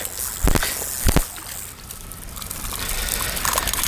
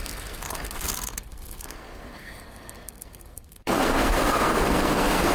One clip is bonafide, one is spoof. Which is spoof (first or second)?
second